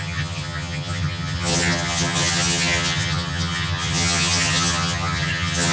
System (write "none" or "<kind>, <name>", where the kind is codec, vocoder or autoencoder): vocoder, HiFi-GAN